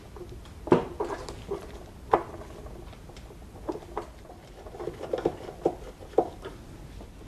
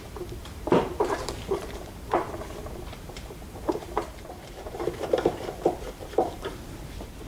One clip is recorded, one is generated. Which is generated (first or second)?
second